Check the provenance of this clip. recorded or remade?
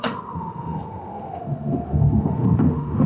remade